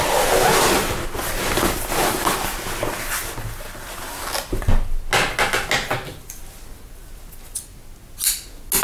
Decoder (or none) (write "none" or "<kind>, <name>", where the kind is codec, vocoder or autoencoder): none